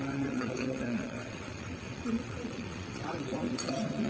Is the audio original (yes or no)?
no